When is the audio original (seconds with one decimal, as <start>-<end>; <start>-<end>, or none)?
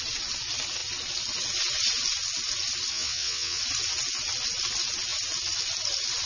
0.0-2.9; 3.6-6.3